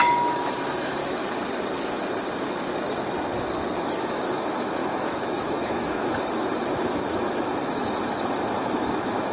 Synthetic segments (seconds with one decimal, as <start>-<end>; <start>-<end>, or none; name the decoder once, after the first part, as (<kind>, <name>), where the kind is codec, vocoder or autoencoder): 0.0-1.0 (autoencoder, DAC-VAE); 3.8-9.3